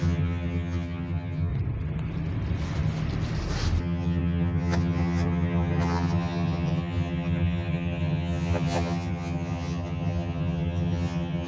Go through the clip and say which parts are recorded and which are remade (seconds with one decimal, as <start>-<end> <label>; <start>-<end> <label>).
0.0-1.5 remade; 1.5-3.8 recorded; 3.8-11.5 remade